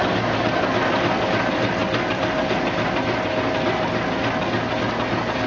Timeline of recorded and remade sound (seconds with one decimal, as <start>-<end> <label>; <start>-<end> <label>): 0.0-5.5 recorded